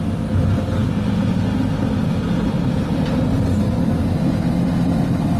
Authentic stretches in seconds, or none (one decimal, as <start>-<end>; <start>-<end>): 0.0-5.4